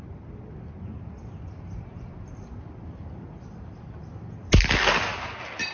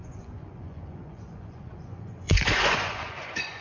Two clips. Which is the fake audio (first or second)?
second